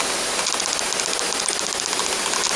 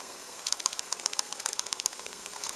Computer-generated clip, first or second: second